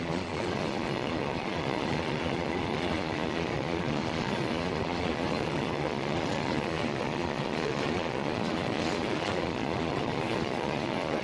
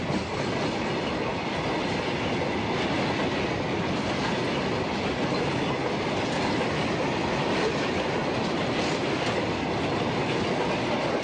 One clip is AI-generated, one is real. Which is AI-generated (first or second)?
first